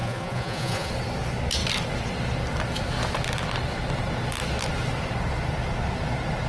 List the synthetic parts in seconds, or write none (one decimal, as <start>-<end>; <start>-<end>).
0.0-0.9